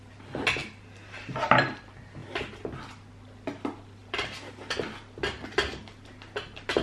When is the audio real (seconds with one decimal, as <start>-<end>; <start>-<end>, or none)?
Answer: 0.0-0.6; 1.8-2.2; 2.8-4.0; 4.7-6.8